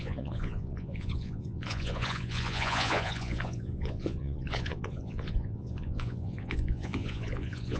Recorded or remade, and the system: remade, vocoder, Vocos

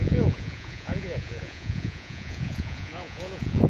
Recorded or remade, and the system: remade, vocoder, Vocos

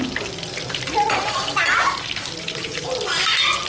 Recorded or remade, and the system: recorded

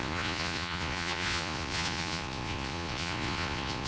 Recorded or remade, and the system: remade, vocoder, Vocos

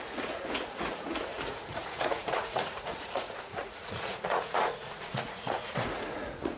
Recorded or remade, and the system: remade, vocoder, Vocos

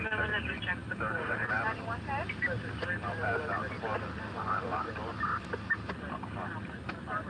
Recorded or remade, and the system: recorded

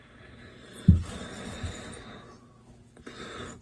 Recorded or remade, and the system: recorded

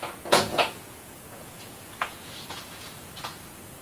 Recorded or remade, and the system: remade, vocoder, Vocos